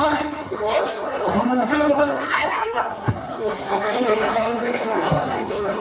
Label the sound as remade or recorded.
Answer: remade